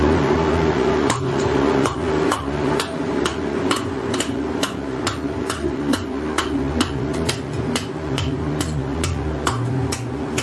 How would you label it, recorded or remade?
remade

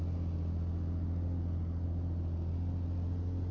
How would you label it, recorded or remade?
recorded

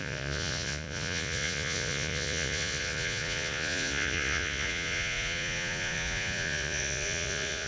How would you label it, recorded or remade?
remade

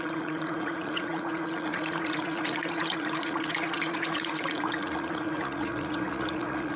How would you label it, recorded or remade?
remade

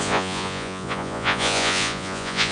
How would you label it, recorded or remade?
remade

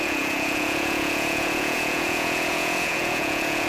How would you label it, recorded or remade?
remade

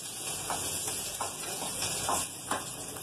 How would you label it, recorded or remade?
remade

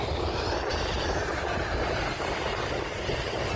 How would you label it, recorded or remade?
recorded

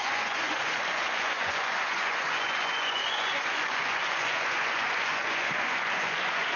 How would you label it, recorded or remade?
remade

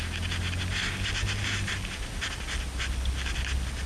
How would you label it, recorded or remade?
recorded